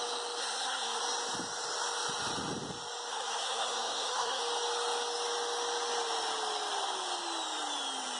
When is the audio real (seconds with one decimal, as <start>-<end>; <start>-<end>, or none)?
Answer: 0.0-0.4; 1.0-3.1; 4.4-8.2